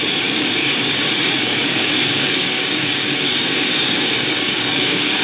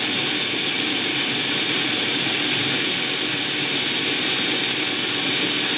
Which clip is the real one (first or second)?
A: second